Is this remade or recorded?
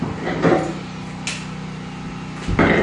recorded